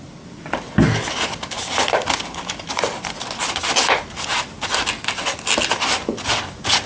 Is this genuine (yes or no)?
yes